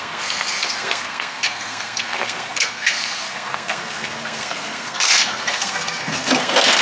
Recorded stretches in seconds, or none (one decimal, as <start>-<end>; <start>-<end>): none